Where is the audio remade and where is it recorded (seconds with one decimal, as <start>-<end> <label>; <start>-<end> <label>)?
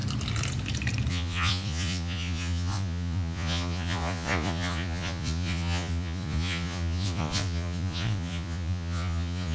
0.0-1.1 recorded; 1.1-9.5 remade